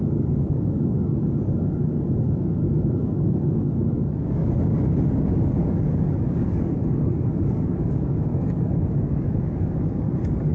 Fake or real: fake